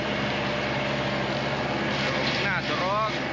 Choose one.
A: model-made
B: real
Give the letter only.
B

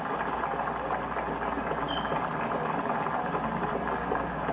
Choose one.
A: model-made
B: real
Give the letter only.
B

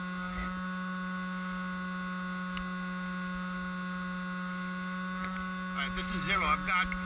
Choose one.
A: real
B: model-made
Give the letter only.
A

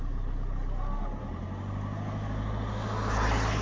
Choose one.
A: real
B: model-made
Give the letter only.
A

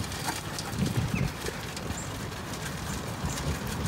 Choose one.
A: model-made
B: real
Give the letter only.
B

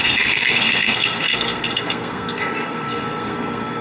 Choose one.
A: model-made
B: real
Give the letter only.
A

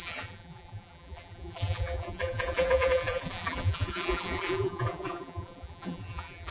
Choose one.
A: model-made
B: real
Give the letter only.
A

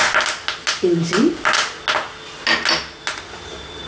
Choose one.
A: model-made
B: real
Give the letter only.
B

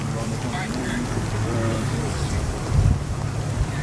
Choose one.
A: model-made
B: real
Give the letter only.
A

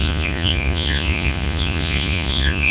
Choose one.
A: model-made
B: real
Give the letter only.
A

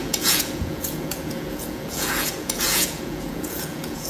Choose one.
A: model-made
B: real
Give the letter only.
A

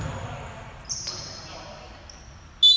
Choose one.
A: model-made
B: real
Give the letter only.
B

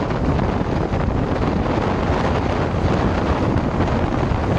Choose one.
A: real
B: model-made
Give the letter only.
A